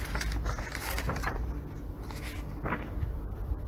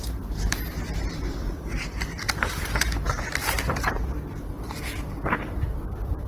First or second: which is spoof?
second